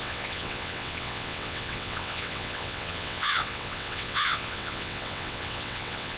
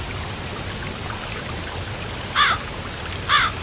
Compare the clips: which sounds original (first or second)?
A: second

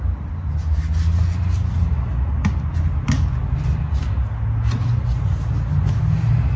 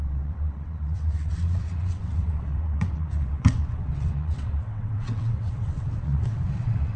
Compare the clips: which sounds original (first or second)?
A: first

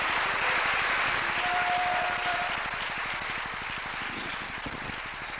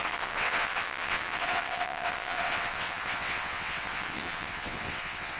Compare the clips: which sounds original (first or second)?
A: first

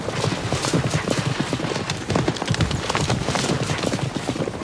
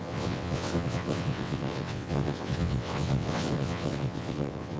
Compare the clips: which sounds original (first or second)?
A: first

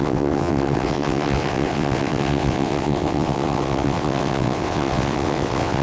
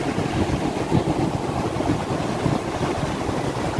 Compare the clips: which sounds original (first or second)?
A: second